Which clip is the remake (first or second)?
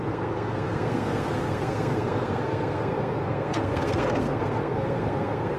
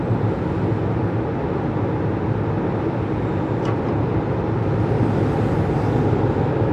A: first